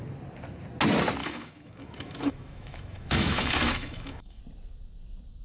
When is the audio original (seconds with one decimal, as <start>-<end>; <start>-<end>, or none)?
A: 0.0-1.2; 4.4-5.4